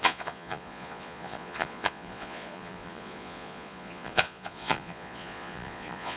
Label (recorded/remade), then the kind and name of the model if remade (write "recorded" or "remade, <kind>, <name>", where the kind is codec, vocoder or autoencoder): remade, vocoder, Vocos